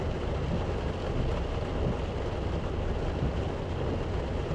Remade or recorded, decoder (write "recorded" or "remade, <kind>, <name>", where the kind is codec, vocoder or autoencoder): recorded